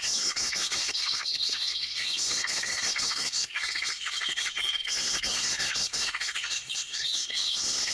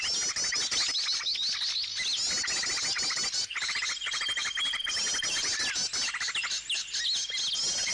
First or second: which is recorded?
second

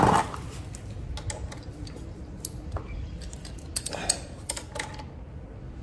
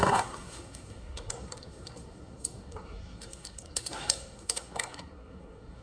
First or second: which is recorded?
first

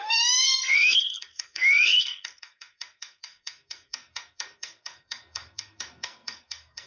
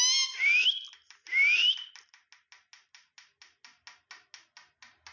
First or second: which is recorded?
second